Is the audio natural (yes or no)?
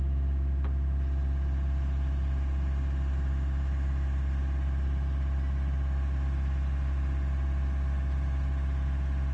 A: yes